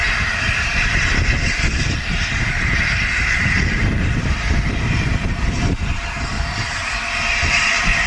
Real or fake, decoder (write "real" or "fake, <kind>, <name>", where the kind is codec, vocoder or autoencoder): fake, vocoder, BigVGAN v2